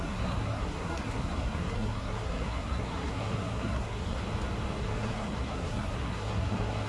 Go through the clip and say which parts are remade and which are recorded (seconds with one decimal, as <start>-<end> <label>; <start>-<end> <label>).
0.0-4.2 remade; 4.2-4.8 recorded; 4.8-6.9 remade